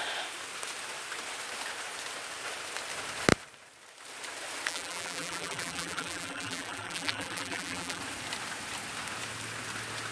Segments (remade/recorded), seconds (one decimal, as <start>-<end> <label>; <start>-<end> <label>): 0.0-4.7 recorded; 4.7-8.0 remade; 8.0-10.1 recorded